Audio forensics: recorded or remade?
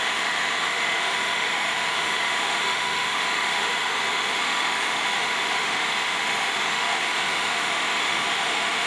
remade